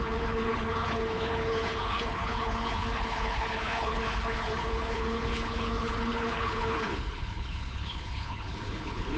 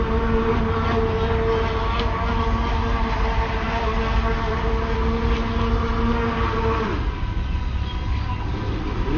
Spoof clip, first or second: first